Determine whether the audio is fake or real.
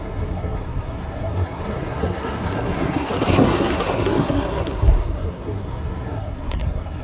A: fake